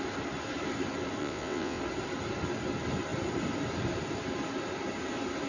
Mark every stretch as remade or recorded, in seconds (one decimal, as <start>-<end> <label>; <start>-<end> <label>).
0.0-1.2 recorded; 1.2-1.8 remade; 1.8-5.5 recorded